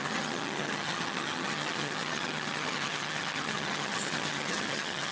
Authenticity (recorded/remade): remade